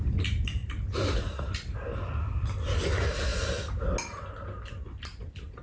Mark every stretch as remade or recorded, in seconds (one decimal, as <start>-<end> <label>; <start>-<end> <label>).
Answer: 0.0-5.6 recorded